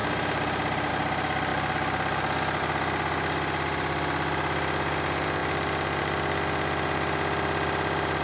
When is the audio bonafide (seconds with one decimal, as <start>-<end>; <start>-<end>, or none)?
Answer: 0.0-5.4; 6.0-8.2